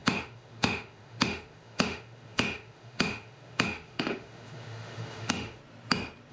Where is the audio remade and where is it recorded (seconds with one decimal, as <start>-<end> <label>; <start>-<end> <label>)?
0.0-5.6 remade; 5.6-6.3 recorded